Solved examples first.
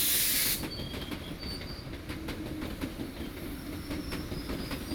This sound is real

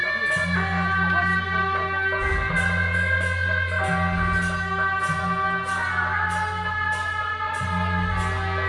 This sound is real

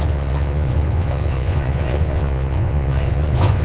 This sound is fake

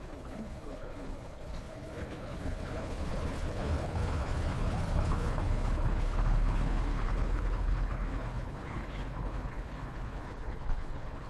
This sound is fake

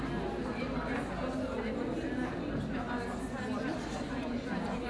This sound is real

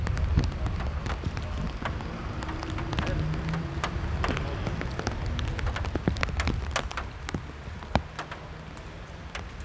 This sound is real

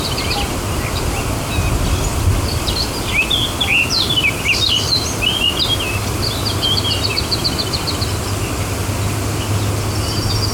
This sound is real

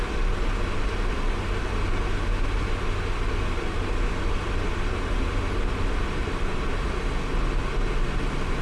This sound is real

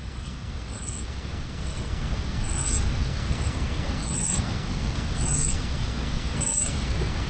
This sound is fake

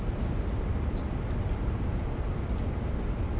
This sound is real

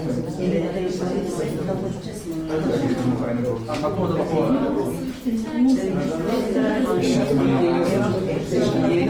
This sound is real